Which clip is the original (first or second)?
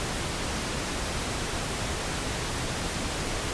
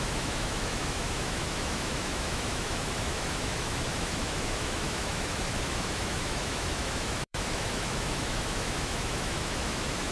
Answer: first